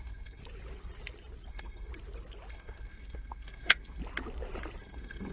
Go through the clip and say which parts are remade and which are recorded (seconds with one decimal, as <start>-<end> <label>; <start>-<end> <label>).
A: 0.0-0.4 remade; 0.4-1.5 recorded; 1.5-1.9 remade; 1.9-2.5 recorded; 2.5-4.0 remade; 4.0-4.8 recorded; 4.8-5.3 remade